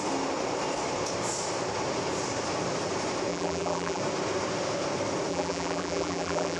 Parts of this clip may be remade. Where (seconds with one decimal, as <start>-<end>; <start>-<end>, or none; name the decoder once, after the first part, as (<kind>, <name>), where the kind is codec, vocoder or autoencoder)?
3.3-4.0 (vocoder, BigVGAN v2); 5.3-6.6